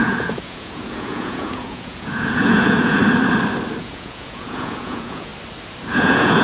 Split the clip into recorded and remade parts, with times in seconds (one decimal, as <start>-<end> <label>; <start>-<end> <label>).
0.0-3.0 remade; 3.0-3.8 recorded; 3.8-5.3 remade; 5.3-5.8 recorded; 5.8-6.4 remade